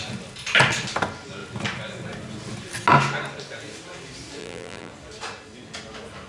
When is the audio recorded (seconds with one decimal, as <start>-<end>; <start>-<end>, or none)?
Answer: 0.0-4.4; 4.9-6.3